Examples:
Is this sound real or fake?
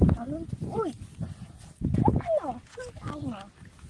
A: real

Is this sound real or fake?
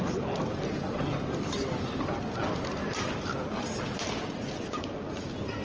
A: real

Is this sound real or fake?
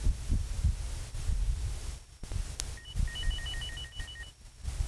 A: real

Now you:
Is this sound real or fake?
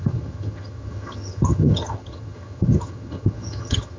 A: fake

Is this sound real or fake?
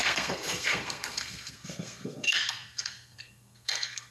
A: fake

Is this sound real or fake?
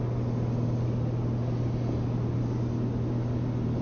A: real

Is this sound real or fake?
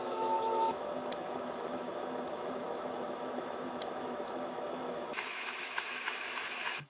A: fake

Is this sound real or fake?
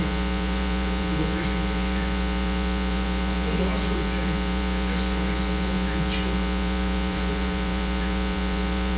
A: fake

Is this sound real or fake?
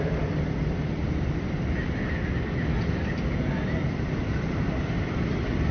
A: fake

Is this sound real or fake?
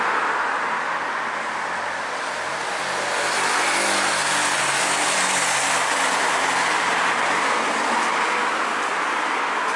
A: real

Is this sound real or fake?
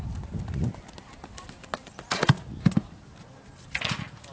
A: real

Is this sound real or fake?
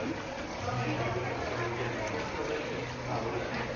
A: real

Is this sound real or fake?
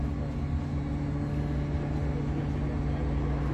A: real